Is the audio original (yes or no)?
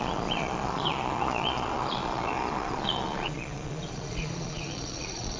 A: no